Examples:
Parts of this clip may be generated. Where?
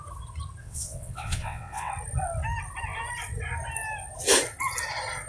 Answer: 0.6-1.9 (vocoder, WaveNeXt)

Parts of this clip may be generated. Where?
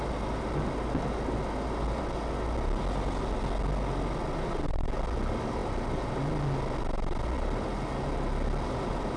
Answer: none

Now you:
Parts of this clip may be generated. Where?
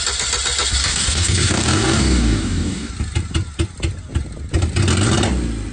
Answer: 0.8-2.9 (codec, DAC)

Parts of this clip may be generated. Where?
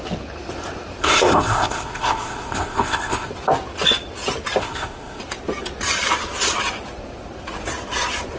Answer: 1.0-3.3 (codec, ZipCodec); 4.6-5.2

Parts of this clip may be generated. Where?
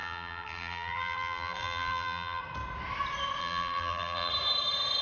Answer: 0.0-2.4 (vocoder, BigVGAN v2); 3.4-4.3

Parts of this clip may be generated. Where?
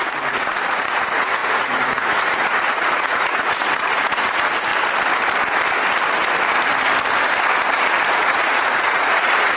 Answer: 0.0-4.7 (vocoder, Vocos); 8.1-9.6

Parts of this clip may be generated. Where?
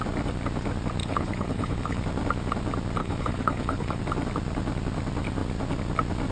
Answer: 1.0-2.0 (codec, HILCodec); 3.0-4.0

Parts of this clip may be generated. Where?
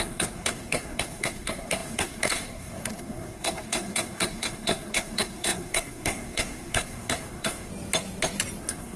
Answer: 0.0-7.7 (codec, SNAC); 8.6-9.0